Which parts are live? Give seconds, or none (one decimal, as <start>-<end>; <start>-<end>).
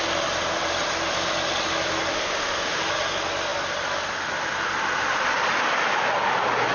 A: 0.0-2.1; 2.8-6.7